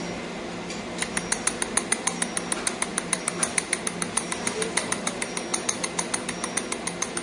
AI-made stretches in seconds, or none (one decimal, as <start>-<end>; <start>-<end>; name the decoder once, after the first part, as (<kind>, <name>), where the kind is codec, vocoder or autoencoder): 2.9-3.8 (vocoder, BigVGAN v2)